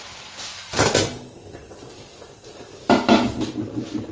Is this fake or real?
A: real